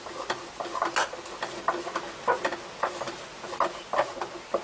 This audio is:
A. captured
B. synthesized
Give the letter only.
A